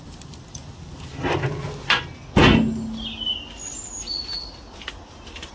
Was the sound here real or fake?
real